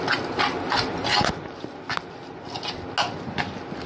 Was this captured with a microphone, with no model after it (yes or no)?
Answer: yes